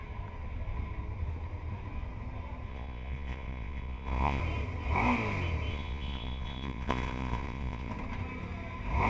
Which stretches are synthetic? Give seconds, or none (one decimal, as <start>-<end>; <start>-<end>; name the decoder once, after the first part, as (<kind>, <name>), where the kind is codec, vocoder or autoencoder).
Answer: 2.7-4.4 (vocoder, Vocos); 5.7-7.9